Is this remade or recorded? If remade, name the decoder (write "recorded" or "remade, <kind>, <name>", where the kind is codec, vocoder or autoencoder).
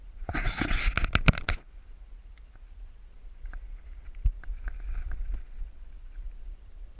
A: recorded